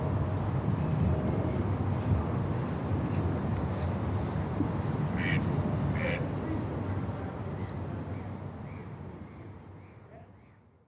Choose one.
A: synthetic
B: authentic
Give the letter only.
B